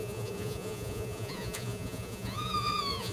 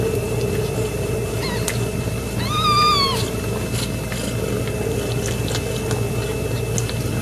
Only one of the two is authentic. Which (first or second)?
second